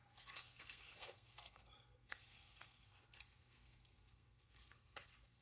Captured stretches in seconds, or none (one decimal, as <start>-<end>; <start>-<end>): none